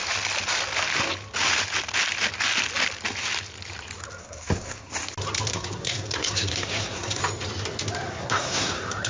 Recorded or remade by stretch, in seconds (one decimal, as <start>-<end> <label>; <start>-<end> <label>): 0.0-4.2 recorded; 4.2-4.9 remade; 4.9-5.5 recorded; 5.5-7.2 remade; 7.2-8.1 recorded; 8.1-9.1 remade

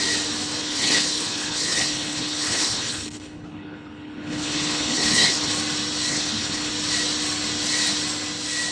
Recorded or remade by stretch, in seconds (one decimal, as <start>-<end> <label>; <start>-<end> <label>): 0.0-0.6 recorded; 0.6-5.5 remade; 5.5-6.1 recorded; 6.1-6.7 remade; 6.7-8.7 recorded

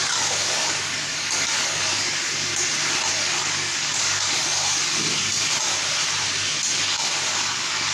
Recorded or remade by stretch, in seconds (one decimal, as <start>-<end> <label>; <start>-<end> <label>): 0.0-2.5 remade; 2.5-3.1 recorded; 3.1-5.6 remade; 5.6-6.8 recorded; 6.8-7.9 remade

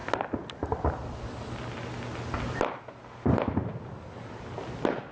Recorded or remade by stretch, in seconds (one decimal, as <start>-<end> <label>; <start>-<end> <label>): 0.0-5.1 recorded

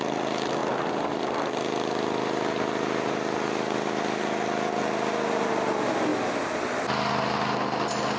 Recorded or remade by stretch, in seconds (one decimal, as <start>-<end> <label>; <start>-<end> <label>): 0.0-8.2 recorded

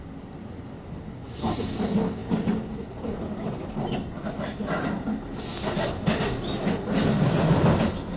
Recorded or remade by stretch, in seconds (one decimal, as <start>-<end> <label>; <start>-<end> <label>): 0.0-8.2 recorded

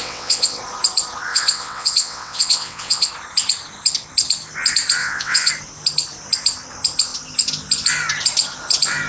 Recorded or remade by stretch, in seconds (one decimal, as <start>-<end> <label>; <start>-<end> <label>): 0.0-0.6 remade; 0.6-1.3 recorded; 1.3-3.1 remade; 3.1-5.0 recorded; 5.0-5.5 remade; 5.5-9.1 recorded